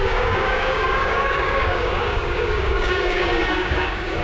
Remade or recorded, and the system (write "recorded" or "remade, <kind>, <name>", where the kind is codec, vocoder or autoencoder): remade, codec, DAC